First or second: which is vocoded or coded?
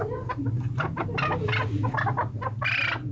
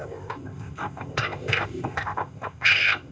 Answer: second